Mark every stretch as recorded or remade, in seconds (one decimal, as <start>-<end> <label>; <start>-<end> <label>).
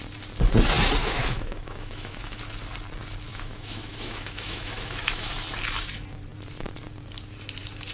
0.0-1.0 recorded; 1.0-2.4 remade; 2.4-3.3 recorded; 3.3-5.3 remade; 5.3-7.9 recorded